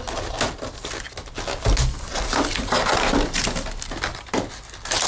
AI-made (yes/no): no